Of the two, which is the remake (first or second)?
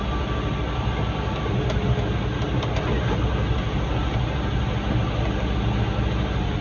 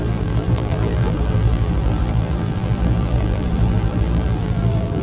second